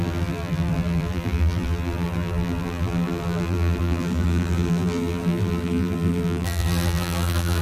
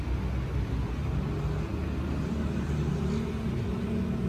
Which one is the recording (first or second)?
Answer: second